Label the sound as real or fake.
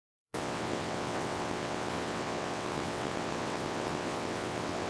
fake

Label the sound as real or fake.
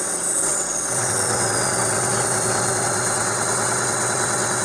fake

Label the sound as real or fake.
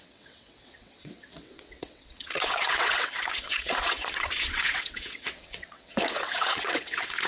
fake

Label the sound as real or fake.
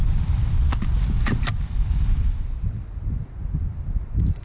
real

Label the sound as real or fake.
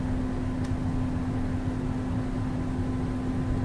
real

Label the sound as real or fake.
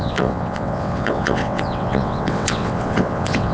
fake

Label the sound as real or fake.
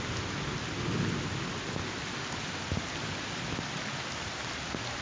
real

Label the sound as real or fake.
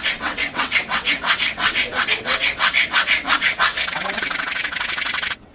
fake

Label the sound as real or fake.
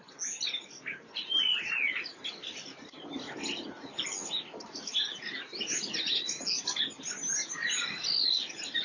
real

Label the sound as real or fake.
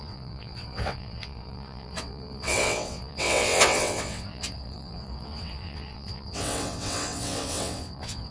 fake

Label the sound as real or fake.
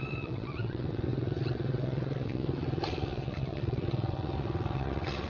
fake